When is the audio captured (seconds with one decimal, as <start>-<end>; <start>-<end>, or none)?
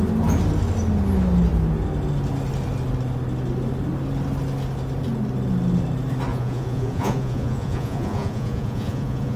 0.0-6.3